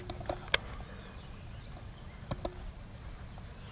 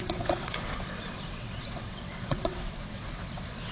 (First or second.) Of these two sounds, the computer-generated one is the second